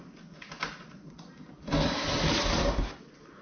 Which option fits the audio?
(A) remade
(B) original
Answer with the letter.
B